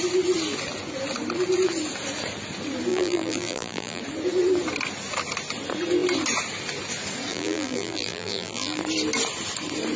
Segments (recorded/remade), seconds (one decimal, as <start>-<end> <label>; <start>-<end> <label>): 0.0-2.9 recorded; 2.9-4.0 remade; 4.0-7.3 recorded; 7.3-8.8 remade; 8.8-10.0 recorded